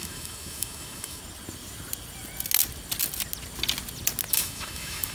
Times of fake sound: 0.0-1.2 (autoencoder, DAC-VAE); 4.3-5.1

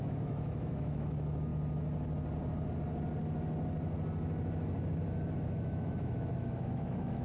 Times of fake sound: 0.0-1.5 (autoencoder, DAC-VAE); 5.3-7.2

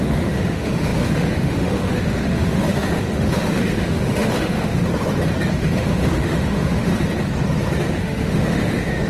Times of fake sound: 0.0-4.9 (autoencoder, DAC-VAE); 5.5-6.9; 7.9-9.1

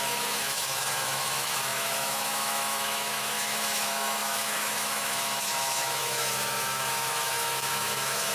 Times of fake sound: 0.0-8.3 (autoencoder, DAC-VAE)

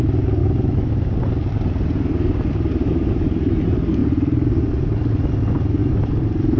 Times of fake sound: 0.4-1.1 (autoencoder, DAC-VAE); 2.8-3.3

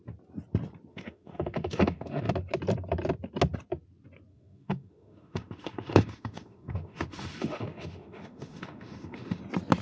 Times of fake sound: 0.9-2.3 (autoencoder, DAC-VAE); 4.3-9.4